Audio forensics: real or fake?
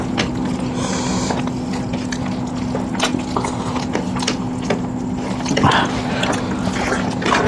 real